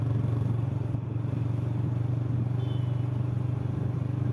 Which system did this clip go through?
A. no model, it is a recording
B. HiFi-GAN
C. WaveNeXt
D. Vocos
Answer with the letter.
A